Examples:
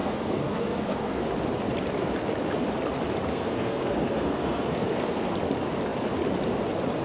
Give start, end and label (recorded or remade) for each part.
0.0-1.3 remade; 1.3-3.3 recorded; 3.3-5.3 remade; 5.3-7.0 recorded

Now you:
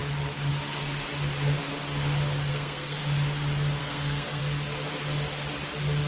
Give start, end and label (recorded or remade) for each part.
0.0-2.5 recorded; 2.5-3.0 remade; 3.0-3.8 recorded; 3.8-4.4 remade; 4.4-6.1 recorded

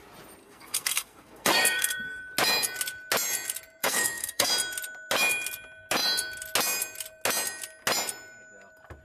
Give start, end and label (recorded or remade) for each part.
0.0-0.4 recorded; 0.4-2.2 remade; 2.2-3.8 recorded; 3.8-4.5 remade; 4.5-9.0 recorded

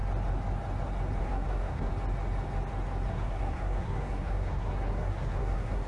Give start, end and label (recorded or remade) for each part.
0.0-1.2 recorded; 1.2-1.9 remade; 1.9-3.1 recorded; 3.1-5.9 remade

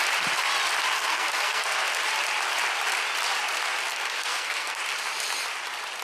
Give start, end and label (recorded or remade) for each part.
0.0-1.0 recorded; 1.0-1.8 remade; 1.8-3.9 recorded; 3.9-4.8 remade; 4.8-6.0 recorded

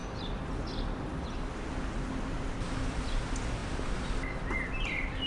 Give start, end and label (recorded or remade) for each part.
0.0-5.3 recorded